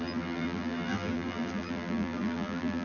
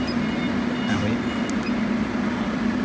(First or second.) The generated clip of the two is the first